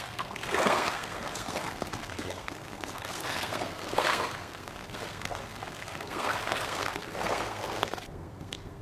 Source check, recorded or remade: remade